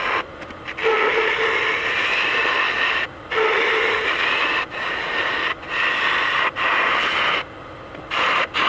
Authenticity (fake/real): real